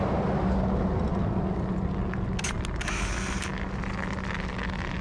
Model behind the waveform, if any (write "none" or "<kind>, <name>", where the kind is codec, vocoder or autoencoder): none